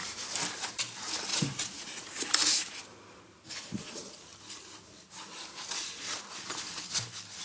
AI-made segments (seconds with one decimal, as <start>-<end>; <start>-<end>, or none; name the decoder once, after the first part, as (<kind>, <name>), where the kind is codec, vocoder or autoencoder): 1.3-2.3 (vocoder, Vocos)